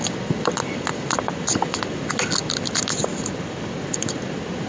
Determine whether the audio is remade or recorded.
recorded